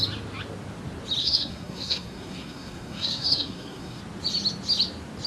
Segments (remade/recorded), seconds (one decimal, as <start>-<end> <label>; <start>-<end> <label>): 0.0-1.2 recorded; 1.2-4.0 remade; 4.0-5.3 recorded